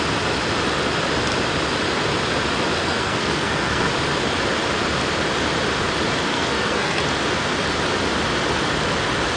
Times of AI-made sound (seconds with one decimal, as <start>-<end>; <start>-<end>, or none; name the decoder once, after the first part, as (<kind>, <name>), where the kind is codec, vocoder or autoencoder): 2.8-3.9 (codec, SNAC); 6.3-7.0